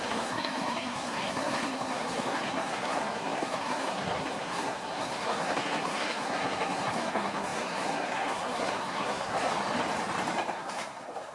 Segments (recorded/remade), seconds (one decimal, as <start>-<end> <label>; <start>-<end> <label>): 0.0-9.5 remade; 9.5-10.5 recorded; 10.5-11.3 remade